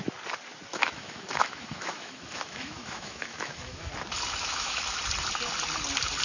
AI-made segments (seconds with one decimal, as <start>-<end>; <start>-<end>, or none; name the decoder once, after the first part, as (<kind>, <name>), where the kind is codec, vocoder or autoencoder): 0.7-3.9 (autoencoder, DAC-VAE); 4.4-5.0